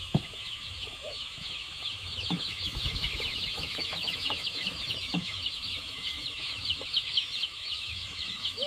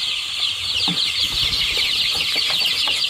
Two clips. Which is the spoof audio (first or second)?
first